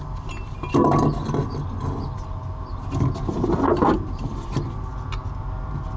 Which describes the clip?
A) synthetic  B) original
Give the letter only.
B